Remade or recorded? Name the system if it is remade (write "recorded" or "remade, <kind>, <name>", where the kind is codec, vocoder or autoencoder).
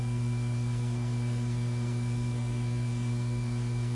remade, codec, SNAC